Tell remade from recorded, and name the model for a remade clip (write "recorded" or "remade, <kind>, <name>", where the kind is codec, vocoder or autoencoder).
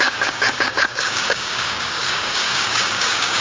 remade, codec, DAC